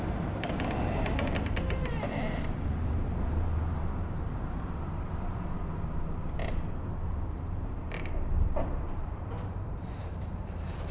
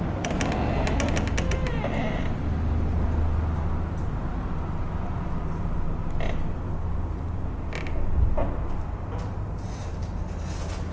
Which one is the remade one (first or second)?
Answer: first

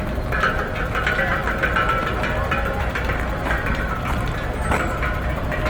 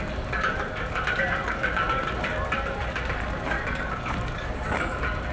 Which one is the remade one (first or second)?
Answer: second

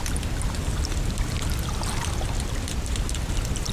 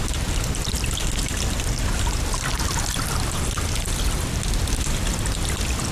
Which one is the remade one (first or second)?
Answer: first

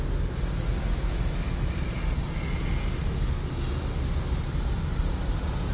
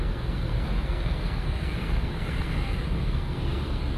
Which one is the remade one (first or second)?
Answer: second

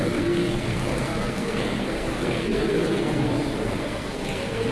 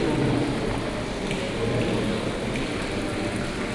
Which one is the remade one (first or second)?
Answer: first